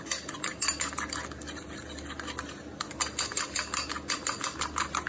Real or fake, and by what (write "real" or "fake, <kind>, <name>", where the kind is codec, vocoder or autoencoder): real